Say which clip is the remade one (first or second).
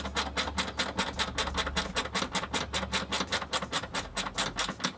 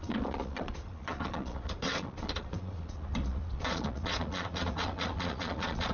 second